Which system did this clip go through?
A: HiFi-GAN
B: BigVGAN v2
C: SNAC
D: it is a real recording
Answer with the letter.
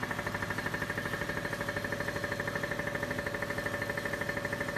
D